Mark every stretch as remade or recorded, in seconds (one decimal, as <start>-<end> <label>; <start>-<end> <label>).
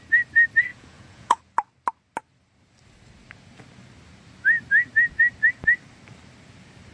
0.0-0.7 recorded; 0.7-1.4 remade; 1.4-6.9 recorded